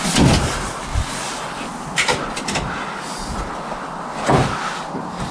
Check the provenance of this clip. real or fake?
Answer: real